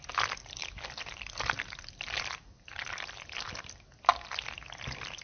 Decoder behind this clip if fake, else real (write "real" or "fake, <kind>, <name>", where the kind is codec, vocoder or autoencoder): real